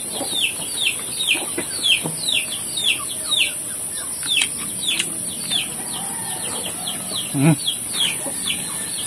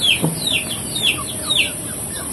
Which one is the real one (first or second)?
first